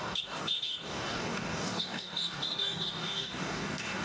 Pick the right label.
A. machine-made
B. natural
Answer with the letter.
A